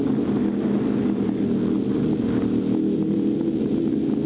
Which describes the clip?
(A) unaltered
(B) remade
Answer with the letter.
A